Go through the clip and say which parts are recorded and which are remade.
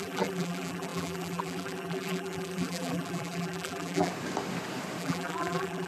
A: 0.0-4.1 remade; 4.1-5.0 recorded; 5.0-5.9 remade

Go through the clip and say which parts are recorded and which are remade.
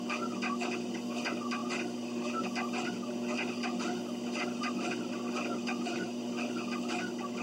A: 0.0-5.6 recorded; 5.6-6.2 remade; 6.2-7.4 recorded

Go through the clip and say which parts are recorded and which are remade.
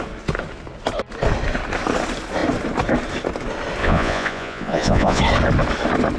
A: 0.0-3.8 recorded; 3.8-5.2 remade; 5.2-6.2 recorded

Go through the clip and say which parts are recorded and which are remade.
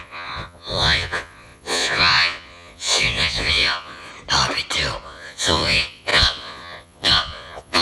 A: 0.0-4.1 remade; 4.1-5.0 recorded; 5.0-7.8 remade